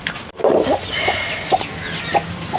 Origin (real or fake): real